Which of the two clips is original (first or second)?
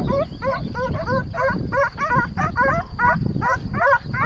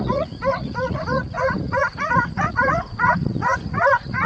first